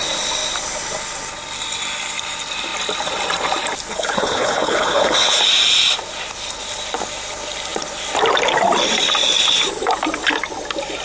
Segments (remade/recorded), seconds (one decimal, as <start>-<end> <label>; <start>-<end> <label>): 0.0-3.9 recorded; 3.9-5.4 remade; 5.4-11.0 recorded

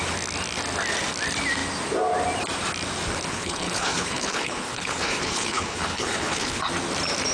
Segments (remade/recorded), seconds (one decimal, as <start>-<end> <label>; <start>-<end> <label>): 0.0-3.3 recorded; 3.3-6.6 remade; 6.6-7.3 recorded

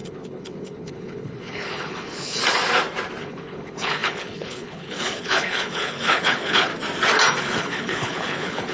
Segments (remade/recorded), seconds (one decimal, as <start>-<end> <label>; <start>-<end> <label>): 0.0-2.4 remade; 2.4-3.2 recorded; 3.2-6.7 remade; 6.7-7.4 recorded; 7.4-8.7 remade

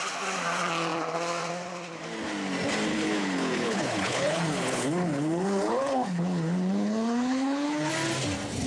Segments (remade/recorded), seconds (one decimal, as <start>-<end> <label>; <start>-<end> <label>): 0.0-2.9 recorded; 2.9-7.9 remade; 7.9-8.7 recorded

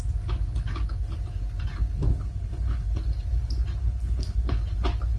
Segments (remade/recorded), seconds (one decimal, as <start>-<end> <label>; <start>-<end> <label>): 0.0-2.1 recorded; 2.1-2.9 remade; 2.9-3.8 recorded; 3.8-4.6 remade; 4.6-5.2 recorded